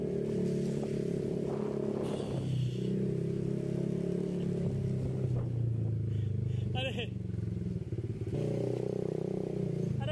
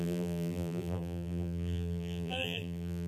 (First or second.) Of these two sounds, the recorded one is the first